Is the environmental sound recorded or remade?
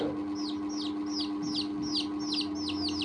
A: recorded